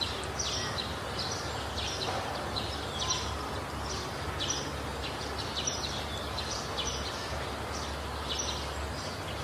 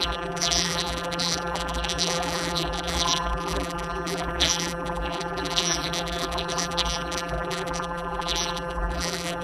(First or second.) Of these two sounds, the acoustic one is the first